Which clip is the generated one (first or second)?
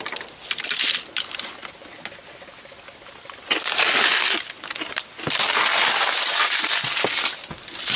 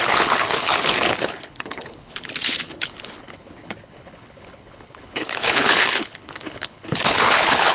second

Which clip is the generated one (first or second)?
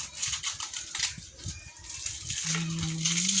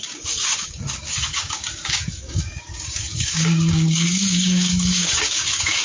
second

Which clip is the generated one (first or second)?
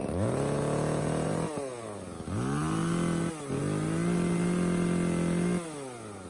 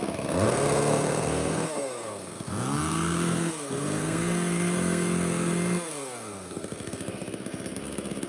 second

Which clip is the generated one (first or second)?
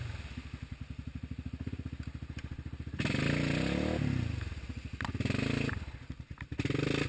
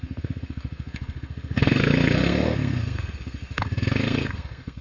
second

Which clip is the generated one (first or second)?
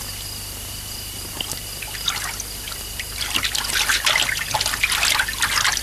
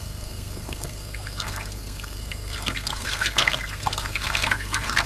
second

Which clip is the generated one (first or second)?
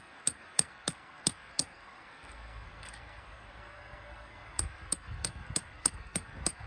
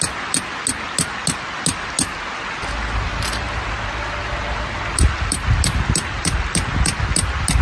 first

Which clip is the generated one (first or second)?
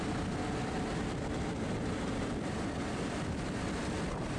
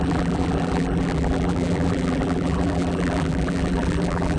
second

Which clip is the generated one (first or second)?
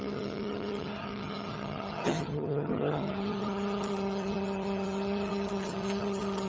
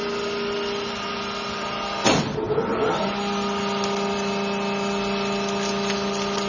first